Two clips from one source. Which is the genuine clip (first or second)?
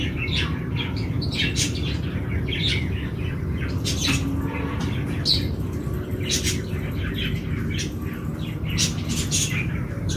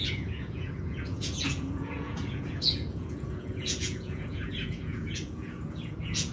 first